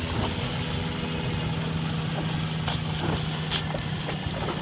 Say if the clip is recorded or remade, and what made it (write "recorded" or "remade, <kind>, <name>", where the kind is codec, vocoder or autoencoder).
recorded